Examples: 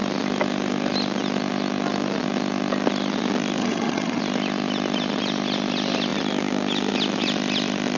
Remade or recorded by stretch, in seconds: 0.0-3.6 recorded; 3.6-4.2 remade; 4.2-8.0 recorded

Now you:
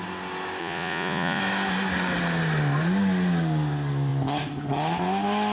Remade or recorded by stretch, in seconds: 0.0-0.6 recorded; 0.6-1.4 remade; 1.4-5.5 recorded